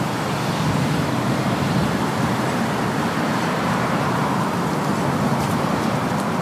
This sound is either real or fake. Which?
fake